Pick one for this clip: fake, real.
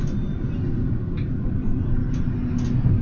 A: real